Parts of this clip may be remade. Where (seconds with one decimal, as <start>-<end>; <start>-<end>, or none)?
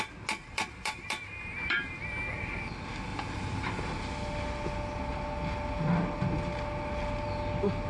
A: 0.4-2.5; 3.1-3.9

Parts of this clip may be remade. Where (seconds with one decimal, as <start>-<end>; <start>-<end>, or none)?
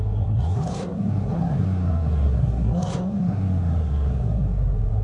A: 0.0-5.0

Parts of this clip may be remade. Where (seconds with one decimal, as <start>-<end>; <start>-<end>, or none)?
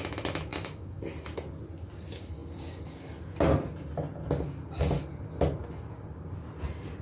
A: 0.5-1.0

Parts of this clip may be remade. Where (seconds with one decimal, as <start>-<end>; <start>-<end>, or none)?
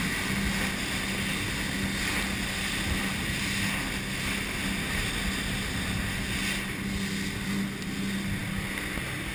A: none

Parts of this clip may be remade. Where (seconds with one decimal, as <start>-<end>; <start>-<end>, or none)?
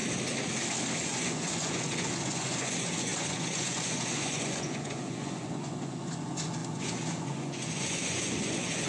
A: 1.0-8.9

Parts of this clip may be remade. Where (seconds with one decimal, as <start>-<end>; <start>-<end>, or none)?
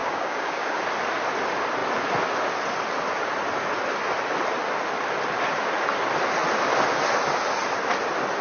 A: 0.0-0.8